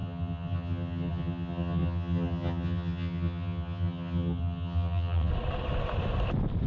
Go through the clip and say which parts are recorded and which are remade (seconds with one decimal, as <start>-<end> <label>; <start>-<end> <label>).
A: 0.0-5.3 remade; 5.3-6.7 recorded

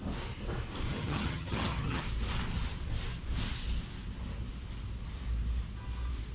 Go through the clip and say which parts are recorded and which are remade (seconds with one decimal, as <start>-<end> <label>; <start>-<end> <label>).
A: 0.0-0.9 recorded; 0.9-2.0 remade; 2.0-6.3 recorded

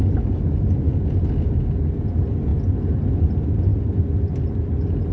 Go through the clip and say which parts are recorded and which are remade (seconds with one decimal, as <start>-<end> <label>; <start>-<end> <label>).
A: 0.0-5.1 recorded